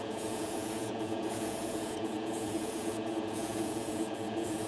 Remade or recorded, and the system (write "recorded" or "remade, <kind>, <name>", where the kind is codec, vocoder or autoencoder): remade, vocoder, Vocos